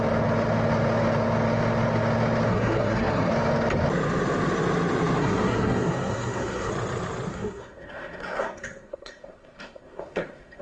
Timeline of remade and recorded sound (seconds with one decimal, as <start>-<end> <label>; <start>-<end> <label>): 0.0-2.5 recorded; 2.5-3.3 remade; 3.3-5.2 recorded; 5.2-6.7 remade; 6.7-7.3 recorded; 7.3-10.6 remade